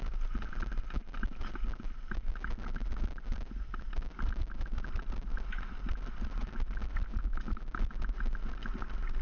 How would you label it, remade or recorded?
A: recorded